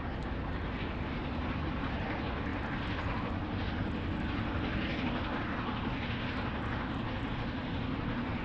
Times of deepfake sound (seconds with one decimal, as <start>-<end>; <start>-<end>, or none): none